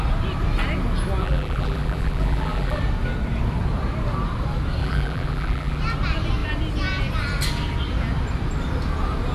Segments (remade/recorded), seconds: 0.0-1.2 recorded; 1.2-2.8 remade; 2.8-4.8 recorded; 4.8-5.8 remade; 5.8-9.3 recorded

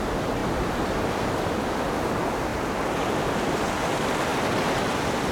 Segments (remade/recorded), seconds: 0.0-5.3 recorded

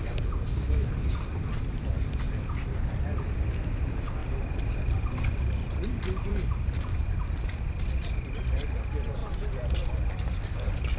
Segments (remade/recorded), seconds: 0.0-4.2 recorded; 4.2-7.8 remade; 7.8-9.2 recorded; 9.2-9.9 remade; 9.9-11.0 recorded

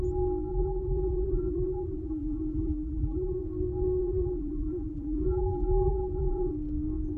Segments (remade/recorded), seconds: 0.0-0.5 recorded; 0.5-3.4 remade; 3.4-4.0 recorded; 4.0-6.5 remade; 6.5-7.2 recorded